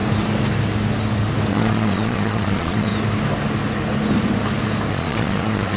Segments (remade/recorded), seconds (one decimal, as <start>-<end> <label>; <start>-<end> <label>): 0.0-1.5 recorded; 1.5-2.9 remade; 2.9-4.9 recorded; 4.9-5.8 remade